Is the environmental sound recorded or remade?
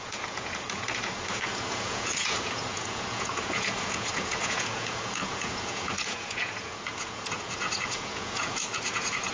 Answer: remade